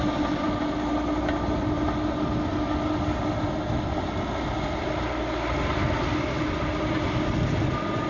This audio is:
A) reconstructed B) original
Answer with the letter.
B